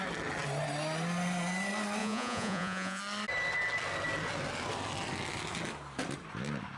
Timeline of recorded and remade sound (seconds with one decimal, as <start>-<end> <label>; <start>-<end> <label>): 0.0-2.0 recorded; 2.0-3.0 remade; 3.0-6.8 recorded